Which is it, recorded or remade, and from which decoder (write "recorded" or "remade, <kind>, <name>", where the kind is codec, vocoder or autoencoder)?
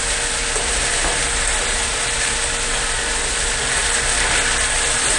recorded